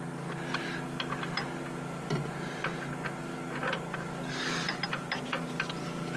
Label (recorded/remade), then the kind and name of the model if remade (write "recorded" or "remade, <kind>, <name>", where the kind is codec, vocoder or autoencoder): recorded